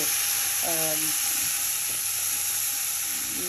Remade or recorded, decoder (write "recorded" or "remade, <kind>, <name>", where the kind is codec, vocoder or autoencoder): recorded